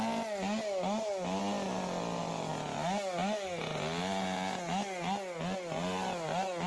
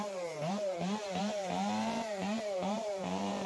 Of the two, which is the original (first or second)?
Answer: first